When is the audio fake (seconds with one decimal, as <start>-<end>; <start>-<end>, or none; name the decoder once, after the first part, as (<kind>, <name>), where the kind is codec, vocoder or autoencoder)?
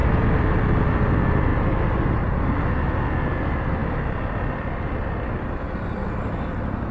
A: 0.0-0.8 (vocoder, BigVGAN v2); 3.8-6.4